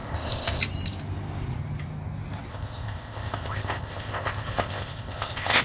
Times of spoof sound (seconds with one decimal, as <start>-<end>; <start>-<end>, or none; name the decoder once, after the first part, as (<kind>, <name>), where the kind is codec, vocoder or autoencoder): 0.0-0.6 (codec, ZipCodec); 2.5-5.6

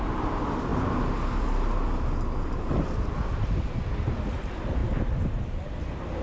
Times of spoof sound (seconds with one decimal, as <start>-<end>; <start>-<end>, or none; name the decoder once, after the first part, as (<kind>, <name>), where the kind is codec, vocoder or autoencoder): none

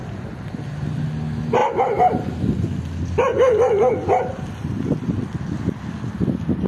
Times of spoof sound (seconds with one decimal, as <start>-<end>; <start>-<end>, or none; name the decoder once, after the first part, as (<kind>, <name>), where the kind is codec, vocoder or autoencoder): none

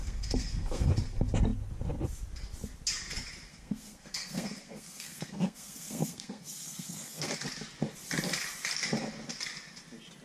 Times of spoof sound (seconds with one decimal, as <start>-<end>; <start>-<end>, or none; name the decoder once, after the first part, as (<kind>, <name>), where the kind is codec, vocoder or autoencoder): 0.0-0.9 (codec, SNAC); 3.5-7.3

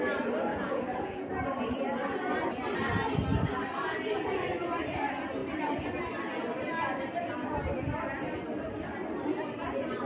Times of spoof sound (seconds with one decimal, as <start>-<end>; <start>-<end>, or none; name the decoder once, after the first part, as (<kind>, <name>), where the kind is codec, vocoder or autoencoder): 0.5-1.3 (vocoder, Vocos)

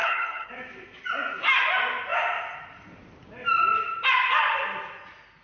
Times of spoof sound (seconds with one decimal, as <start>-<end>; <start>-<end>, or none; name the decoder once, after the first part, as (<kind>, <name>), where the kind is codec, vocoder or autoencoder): 0.0-0.5 (codec, HILCodec)